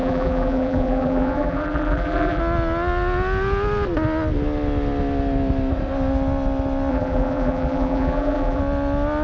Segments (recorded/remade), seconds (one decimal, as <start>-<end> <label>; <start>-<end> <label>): 0.0-2.4 remade; 2.4-6.9 recorded; 6.9-8.6 remade; 8.6-9.2 recorded